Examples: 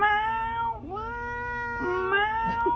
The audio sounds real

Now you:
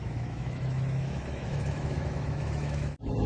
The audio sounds fake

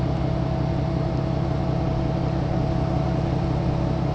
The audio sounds real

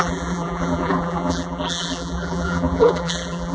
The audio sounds fake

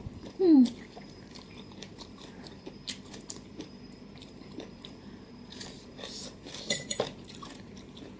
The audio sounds fake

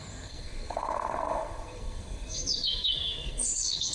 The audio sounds fake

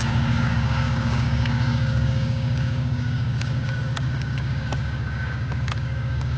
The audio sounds fake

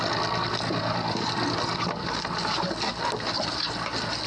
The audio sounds real